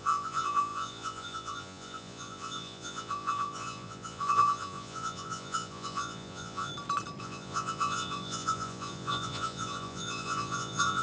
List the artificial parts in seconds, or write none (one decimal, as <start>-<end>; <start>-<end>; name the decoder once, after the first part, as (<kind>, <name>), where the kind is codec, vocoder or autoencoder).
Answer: 0.0-6.7 (vocoder, Vocos); 7.2-11.0